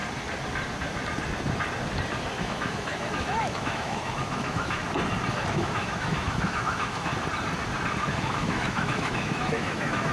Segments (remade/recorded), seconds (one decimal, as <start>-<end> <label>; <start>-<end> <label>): 0.0-2.4 recorded; 2.4-4.8 remade; 4.8-5.5 recorded; 5.5-7.1 remade; 7.1-8.1 recorded; 8.1-10.1 remade